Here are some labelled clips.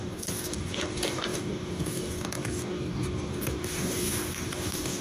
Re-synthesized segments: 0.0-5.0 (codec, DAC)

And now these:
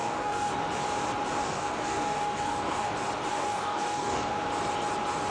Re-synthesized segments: 0.0-0.5 (codec, DAC); 1.4-2.9; 3.3-4.3